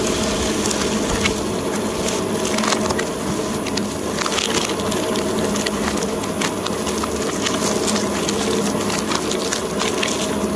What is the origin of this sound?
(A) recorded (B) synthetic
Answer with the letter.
A